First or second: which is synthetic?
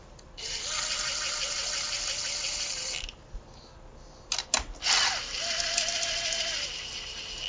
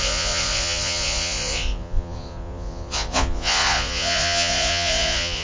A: second